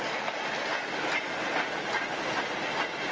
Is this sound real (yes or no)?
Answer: yes